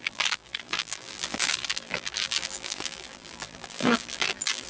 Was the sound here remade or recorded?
remade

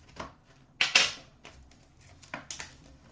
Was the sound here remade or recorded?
recorded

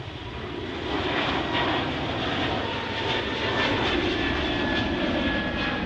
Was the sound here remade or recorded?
recorded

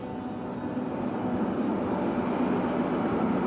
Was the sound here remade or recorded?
recorded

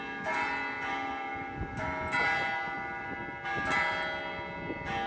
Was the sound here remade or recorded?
recorded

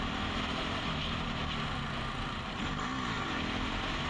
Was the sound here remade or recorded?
recorded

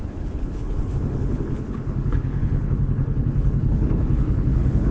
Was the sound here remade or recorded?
remade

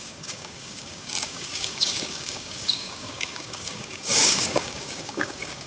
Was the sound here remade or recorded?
remade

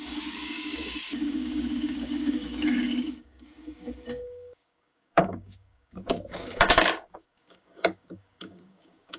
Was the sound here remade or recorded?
remade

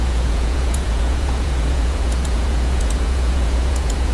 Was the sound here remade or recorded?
remade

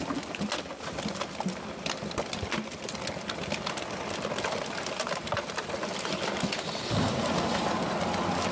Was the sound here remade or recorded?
recorded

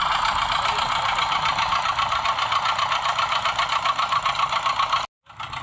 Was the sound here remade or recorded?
recorded